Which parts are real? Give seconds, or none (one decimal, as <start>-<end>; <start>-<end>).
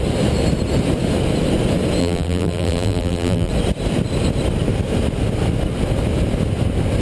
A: 0.0-2.0; 3.5-7.0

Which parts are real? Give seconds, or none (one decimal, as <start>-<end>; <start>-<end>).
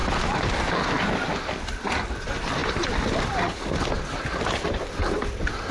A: 0.0-2.6; 3.5-5.0